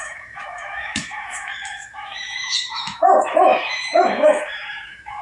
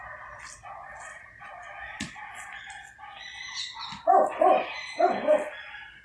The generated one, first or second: first